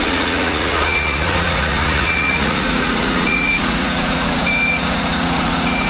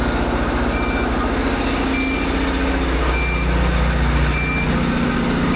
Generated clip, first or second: first